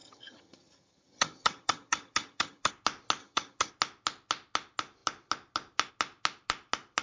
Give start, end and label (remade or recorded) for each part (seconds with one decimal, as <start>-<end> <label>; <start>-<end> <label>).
0.0-2.7 remade; 2.7-3.2 recorded; 3.2-3.7 remade; 3.7-7.0 recorded